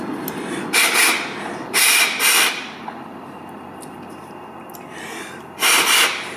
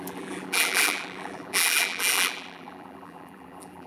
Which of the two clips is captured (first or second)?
first